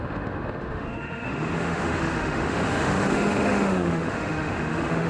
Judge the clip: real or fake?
fake